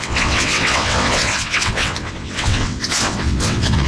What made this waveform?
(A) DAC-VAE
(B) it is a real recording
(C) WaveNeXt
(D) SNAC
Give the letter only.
C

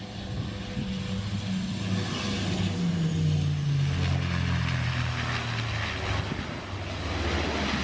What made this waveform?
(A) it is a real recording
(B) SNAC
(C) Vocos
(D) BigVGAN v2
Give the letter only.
A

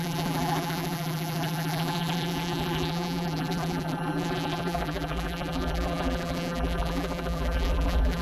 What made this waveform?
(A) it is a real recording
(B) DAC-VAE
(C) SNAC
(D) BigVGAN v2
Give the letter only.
D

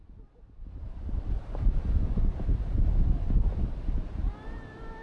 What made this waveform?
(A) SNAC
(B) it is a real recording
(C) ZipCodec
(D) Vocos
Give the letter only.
B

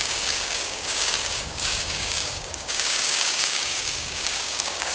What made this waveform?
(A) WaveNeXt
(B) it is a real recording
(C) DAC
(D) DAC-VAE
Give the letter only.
C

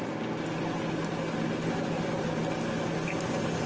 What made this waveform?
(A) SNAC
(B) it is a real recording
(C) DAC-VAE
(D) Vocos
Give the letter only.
B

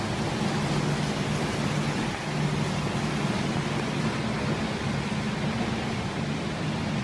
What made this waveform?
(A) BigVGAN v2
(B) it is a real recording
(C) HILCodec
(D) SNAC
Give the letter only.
B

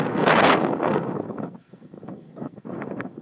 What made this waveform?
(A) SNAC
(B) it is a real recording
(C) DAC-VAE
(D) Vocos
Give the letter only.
A